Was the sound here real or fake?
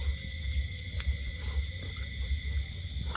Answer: real